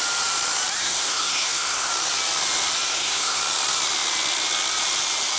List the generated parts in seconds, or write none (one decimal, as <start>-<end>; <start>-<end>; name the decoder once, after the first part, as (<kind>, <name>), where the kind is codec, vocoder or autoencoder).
0.8-1.9 (codec, SNAC); 2.9-3.4